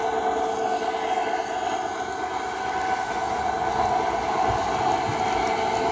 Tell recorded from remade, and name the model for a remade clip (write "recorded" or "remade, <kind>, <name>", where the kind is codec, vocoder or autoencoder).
recorded